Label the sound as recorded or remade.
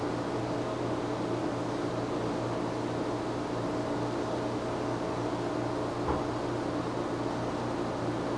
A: recorded